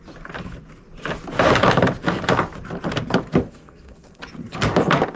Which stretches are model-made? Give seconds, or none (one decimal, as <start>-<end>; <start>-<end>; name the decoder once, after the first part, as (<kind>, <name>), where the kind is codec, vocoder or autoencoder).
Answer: 3.4-4.2 (codec, SNAC)